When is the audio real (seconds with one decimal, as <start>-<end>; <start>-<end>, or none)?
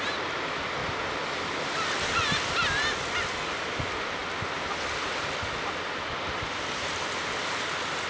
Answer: 0.8-3.6; 4.2-5.2